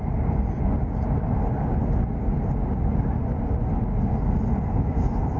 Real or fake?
real